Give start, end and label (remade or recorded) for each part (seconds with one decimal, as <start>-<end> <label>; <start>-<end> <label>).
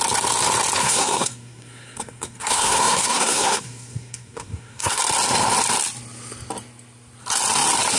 0.0-0.8 recorded; 0.8-5.0 remade; 5.0-8.0 recorded